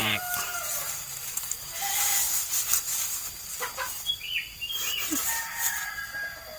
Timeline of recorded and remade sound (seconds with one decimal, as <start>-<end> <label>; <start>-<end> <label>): 0.0-1.2 remade; 1.2-6.6 recorded